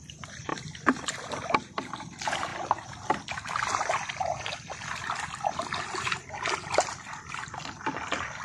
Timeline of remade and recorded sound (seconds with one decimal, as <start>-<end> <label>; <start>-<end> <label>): 0.0-8.4 recorded